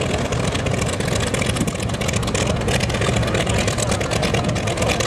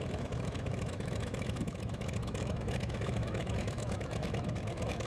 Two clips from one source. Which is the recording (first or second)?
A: first